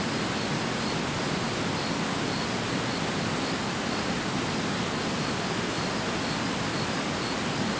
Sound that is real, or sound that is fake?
real